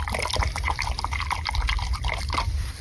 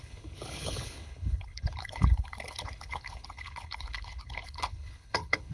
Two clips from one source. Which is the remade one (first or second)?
second